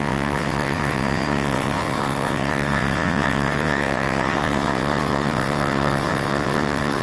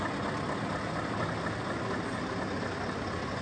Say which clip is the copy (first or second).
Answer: first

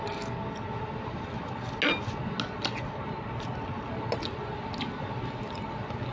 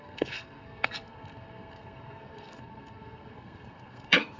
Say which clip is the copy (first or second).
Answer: second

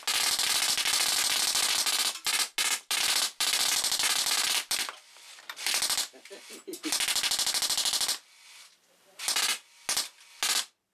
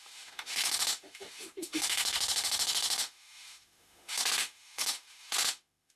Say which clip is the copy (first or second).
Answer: second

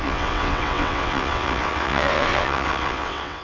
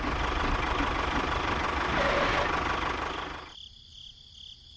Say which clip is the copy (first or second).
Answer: first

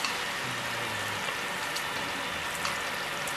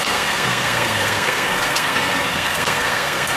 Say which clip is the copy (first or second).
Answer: second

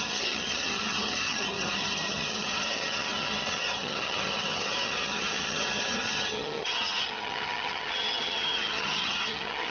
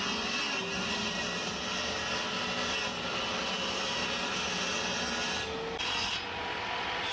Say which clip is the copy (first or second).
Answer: first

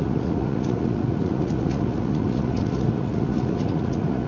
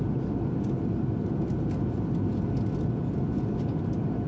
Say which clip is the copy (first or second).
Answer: first